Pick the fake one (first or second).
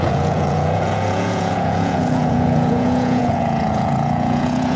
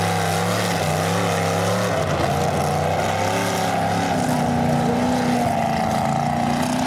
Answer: first